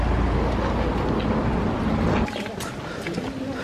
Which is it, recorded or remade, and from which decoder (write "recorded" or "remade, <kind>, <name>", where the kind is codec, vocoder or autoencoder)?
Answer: recorded